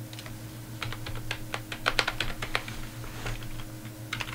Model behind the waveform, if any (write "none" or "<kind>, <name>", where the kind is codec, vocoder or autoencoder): none